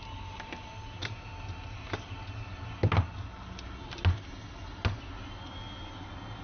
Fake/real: real